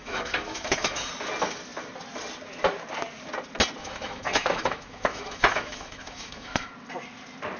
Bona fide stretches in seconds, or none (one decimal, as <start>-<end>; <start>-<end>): 1.1-3.8; 6.7-7.6